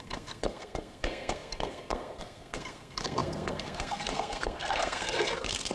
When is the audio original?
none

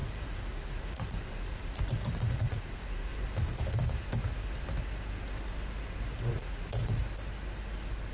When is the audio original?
3.1-6.3; 7.0-8.1

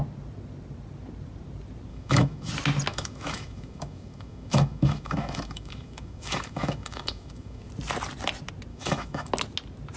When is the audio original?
0.0-1.9; 2.5-2.9; 7.7-8.7; 9.3-10.0

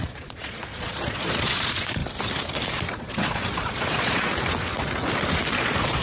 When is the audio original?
2.0-2.9; 4.3-5.5

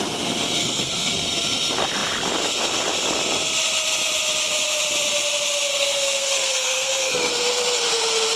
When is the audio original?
0.0-0.6; 1.1-5.7; 7.3-8.4

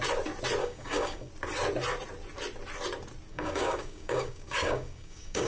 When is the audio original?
0.0-0.6; 1.3-3.3

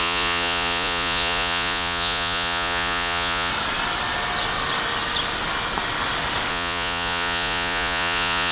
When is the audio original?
3.5-6.5

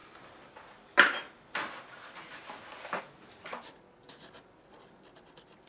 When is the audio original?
0.0-5.7